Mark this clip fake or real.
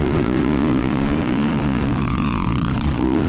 fake